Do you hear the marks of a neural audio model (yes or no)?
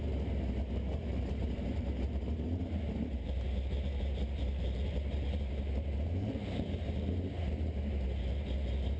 yes